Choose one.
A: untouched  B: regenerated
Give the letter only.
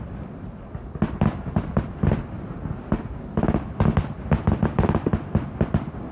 A